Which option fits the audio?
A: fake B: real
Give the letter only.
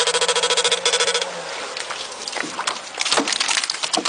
B